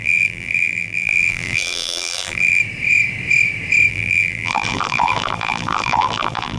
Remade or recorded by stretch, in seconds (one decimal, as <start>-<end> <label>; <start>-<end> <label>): 0.0-2.6 remade; 2.6-3.9 recorded; 3.9-6.6 remade